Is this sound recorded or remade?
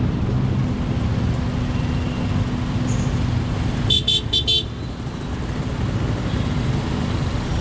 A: recorded